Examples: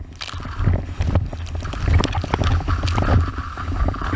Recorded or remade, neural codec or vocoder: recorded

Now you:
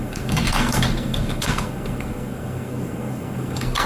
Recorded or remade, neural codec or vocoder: remade, codec, SNAC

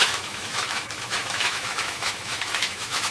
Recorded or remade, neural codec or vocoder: remade, autoencoder, DAC-VAE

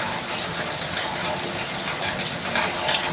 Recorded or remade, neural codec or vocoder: recorded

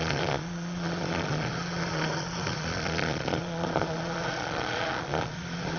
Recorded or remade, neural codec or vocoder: remade, vocoder, Vocos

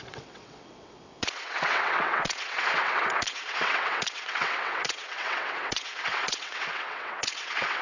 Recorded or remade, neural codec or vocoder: remade, vocoder, WaveNeXt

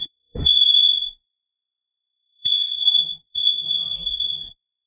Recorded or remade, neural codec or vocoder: remade, codec, SNAC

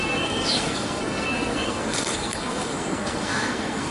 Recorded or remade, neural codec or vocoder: remade, codec, SNAC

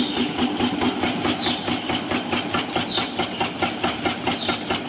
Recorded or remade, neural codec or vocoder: recorded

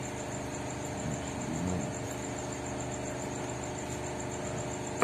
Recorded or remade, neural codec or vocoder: recorded